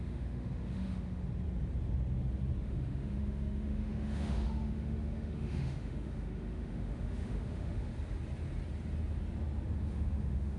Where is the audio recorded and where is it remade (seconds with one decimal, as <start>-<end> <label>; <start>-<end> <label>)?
0.0-1.2 remade; 1.2-2.6 recorded; 2.6-7.9 remade; 7.9-9.8 recorded; 9.8-10.6 remade